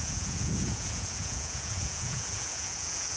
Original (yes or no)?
no